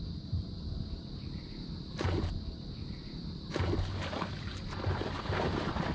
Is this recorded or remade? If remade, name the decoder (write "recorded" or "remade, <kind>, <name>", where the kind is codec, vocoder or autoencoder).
remade, vocoder, BigVGAN v2